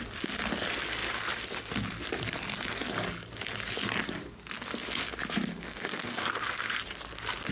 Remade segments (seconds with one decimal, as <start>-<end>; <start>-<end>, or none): 5.5-6.8